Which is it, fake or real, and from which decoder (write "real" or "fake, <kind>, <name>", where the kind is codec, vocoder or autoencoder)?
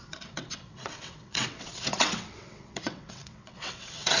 fake, vocoder, WaveNeXt